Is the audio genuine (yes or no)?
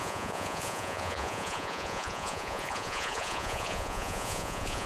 no